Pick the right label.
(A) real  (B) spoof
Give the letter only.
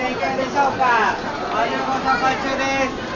A